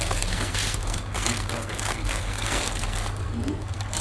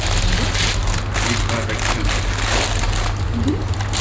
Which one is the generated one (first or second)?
first